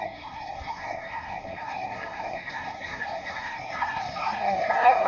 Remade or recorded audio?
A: remade